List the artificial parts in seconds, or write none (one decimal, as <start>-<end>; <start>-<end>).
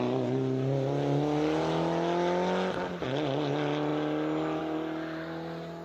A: none